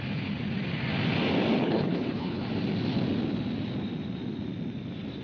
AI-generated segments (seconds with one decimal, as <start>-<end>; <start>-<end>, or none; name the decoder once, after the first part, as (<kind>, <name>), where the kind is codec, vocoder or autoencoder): 1.6-2.5 (codec, HILCodec)